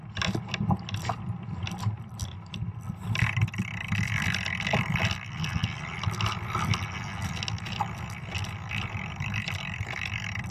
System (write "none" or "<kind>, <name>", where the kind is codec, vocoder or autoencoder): none